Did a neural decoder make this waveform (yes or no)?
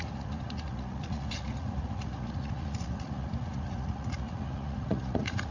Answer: yes